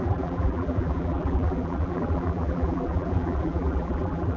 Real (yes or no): no